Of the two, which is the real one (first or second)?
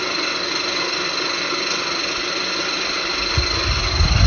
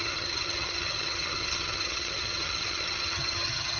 first